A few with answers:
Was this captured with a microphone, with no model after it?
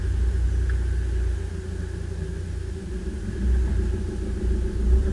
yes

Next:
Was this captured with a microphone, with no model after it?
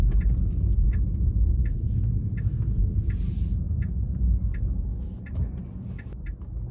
yes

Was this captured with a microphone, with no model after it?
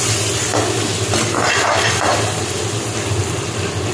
yes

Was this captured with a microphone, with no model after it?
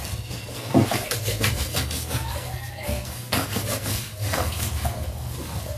no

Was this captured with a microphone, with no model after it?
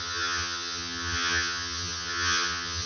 no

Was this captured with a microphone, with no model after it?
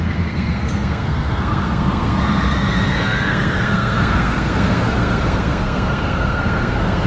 no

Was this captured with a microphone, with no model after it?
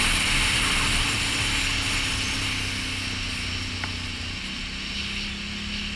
yes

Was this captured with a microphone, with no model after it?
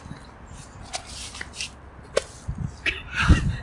yes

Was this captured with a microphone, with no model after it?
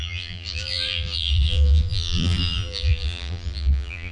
no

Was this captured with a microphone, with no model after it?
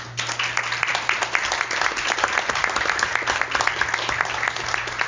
yes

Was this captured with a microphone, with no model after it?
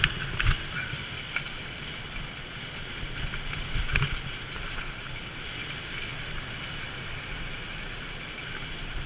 yes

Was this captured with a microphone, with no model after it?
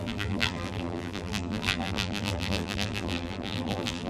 no